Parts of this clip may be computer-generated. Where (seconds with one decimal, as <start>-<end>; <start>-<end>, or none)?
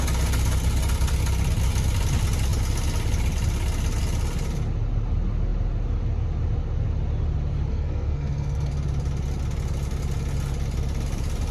7.7-8.7